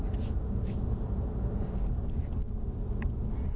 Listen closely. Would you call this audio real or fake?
real